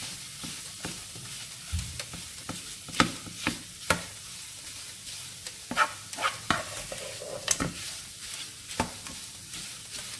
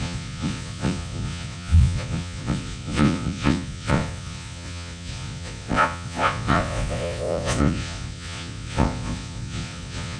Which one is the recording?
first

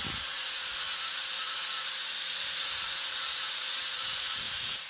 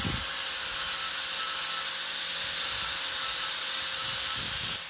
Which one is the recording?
second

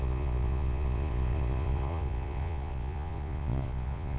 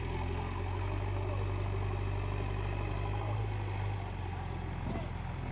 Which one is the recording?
second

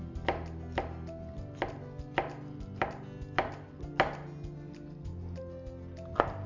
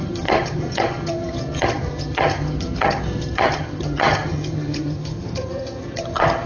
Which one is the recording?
first